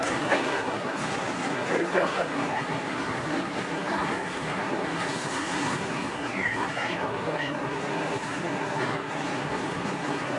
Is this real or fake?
fake